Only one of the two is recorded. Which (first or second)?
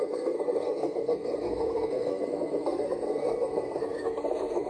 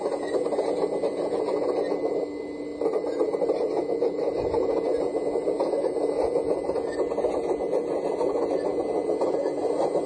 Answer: second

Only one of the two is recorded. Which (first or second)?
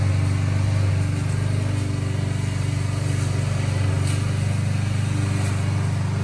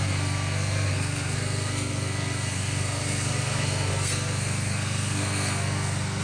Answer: first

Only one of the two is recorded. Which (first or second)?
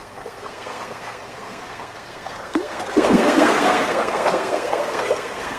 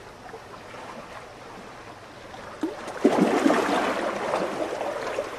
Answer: second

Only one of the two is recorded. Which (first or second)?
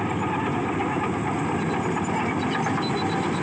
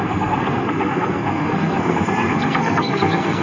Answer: first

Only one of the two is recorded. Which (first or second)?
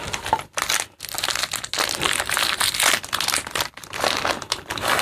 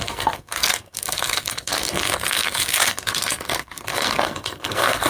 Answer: first